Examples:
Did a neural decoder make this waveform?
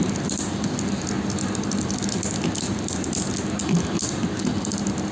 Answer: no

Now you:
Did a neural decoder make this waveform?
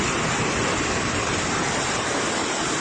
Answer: yes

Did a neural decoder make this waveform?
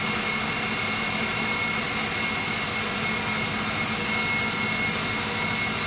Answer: no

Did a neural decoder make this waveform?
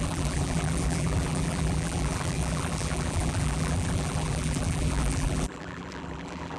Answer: yes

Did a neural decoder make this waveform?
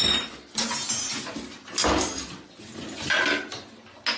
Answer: no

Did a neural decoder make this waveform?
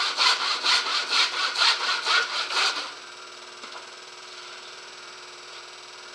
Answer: yes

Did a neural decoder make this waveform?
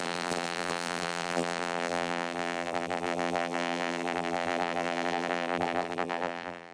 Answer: yes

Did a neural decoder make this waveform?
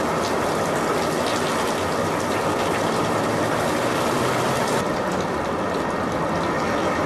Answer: no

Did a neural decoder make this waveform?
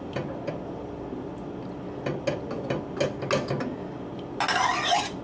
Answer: no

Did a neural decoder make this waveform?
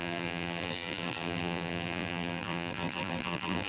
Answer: yes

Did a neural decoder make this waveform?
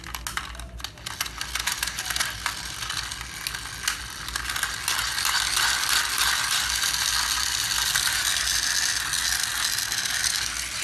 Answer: no